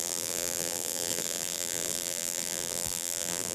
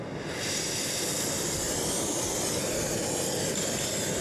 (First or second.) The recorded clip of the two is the second